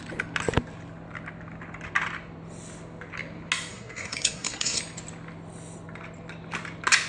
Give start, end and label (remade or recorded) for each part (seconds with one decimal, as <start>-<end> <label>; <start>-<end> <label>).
0.0-3.7 recorded; 3.7-4.8 remade; 4.8-7.1 recorded